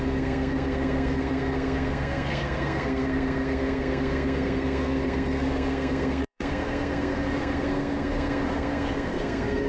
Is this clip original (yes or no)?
no